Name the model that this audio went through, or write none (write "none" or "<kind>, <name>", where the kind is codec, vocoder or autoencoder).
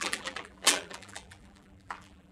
vocoder, BigVGAN v2